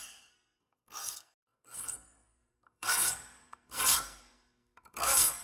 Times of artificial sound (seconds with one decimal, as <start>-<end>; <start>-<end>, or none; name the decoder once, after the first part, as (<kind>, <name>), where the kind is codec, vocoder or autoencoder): 0.0-5.4 (codec, SNAC)